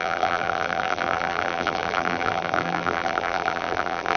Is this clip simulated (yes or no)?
yes